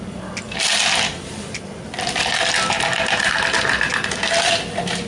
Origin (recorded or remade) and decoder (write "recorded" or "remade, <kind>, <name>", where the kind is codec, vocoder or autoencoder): recorded